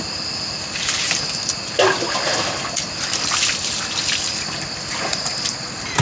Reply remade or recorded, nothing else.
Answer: recorded